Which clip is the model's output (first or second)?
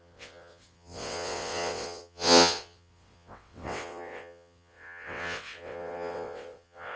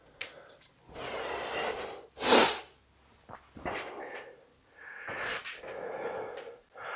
first